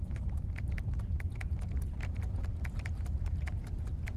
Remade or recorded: remade